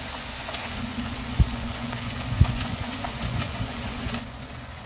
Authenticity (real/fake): fake